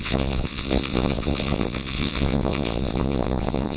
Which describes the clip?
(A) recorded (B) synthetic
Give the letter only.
B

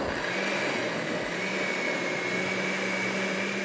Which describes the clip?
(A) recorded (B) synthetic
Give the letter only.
A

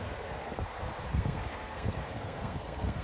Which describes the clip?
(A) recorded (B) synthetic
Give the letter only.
B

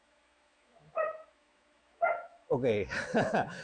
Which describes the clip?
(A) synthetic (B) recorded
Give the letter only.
A